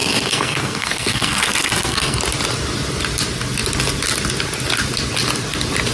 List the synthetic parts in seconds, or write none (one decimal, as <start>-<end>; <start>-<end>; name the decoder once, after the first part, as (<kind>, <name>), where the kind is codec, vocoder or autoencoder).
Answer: 0.0-2.2 (codec, SNAC)